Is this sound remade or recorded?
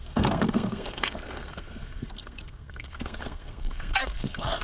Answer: remade